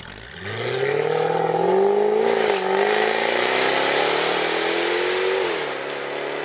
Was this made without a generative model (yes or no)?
yes